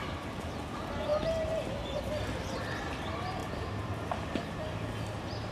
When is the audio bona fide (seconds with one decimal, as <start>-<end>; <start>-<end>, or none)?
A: 0.6-1.1; 2.0-5.5